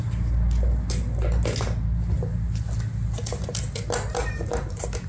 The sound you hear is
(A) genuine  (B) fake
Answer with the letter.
A